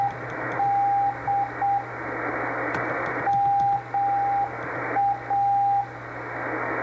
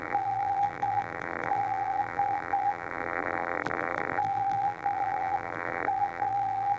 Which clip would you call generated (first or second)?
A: second